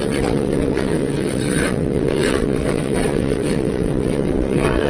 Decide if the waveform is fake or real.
fake